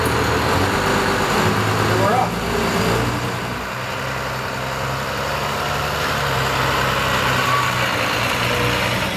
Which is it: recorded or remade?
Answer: recorded